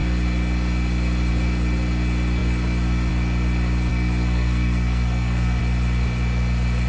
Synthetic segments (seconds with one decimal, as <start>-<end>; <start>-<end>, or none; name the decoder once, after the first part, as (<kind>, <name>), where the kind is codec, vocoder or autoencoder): 3.9-5.6 (codec, SNAC)